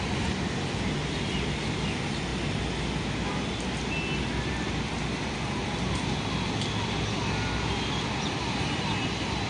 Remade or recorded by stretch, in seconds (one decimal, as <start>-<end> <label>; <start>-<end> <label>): 0.0-9.5 recorded